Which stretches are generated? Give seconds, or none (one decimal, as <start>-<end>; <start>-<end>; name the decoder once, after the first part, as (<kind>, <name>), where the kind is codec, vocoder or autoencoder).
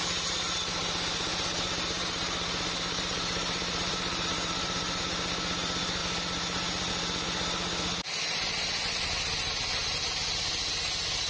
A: 0.7-5.0 (vocoder, BigVGAN v2)